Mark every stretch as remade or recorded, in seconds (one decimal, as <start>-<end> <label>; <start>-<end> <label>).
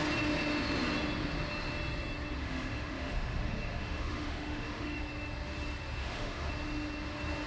0.0-2.4 recorded; 2.4-5.0 remade; 5.0-6.0 recorded; 6.0-6.5 remade; 6.5-7.5 recorded